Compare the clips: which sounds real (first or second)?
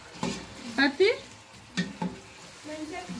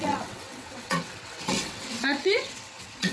first